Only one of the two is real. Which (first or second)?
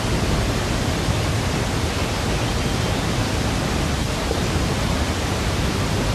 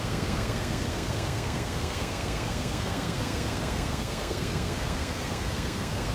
first